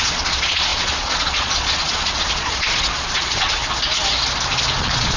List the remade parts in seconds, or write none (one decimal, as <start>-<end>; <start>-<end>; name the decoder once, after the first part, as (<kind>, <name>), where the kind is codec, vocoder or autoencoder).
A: 0.0-3.6 (vocoder, Vocos); 4.8-5.2